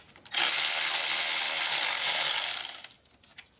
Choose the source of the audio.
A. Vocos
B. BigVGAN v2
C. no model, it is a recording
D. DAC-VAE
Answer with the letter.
C